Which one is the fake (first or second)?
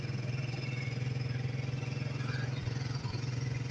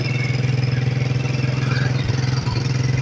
first